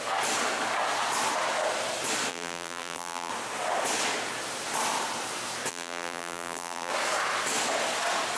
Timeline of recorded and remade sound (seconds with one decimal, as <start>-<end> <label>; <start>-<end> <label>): 0.0-2.3 recorded; 2.3-3.3 remade; 3.3-5.7 recorded; 5.7-6.9 remade; 6.9-8.4 recorded